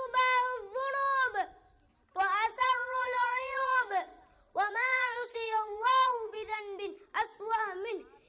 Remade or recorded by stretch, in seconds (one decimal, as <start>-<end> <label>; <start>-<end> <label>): 0.0-2.6 recorded; 2.6-6.6 remade; 6.6-8.3 recorded